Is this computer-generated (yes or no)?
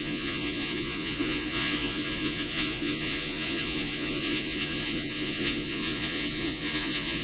yes